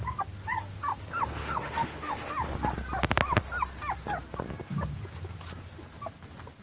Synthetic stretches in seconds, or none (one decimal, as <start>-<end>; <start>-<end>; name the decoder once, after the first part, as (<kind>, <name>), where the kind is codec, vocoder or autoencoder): 1.4-2.2 (autoencoder, DAC-VAE)